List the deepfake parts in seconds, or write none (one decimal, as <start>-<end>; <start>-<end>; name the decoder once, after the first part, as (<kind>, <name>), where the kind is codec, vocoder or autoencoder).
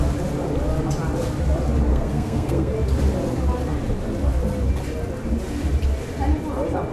1.9-2.7 (codec, SNAC)